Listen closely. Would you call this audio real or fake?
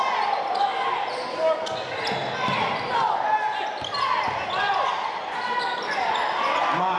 real